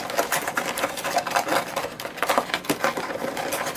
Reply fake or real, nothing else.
real